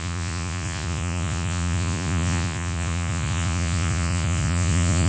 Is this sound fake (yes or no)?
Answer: yes